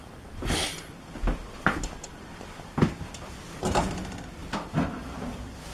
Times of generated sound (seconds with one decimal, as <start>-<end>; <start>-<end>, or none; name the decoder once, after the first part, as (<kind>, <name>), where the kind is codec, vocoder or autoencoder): none